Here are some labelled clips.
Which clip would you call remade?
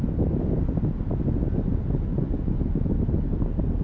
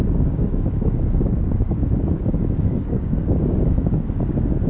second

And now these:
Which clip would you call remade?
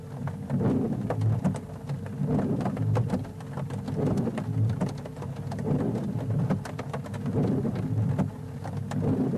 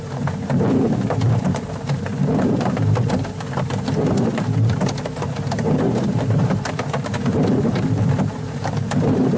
second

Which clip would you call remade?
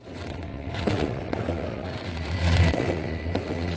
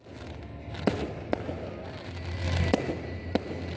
first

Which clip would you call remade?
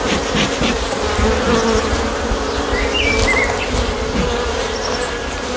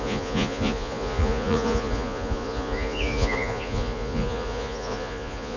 second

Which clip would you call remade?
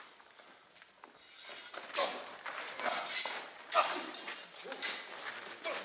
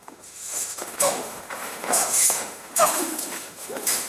second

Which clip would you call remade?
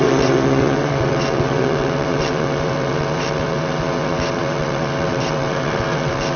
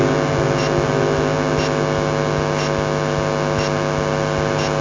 first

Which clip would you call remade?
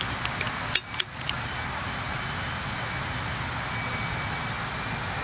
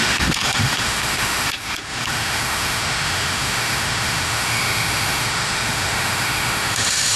second